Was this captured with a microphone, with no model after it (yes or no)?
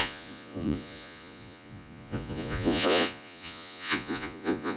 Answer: no